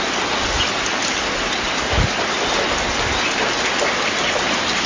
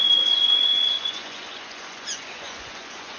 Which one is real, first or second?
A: first